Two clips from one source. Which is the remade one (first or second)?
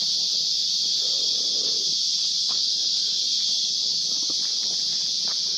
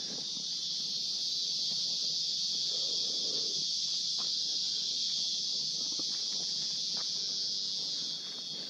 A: first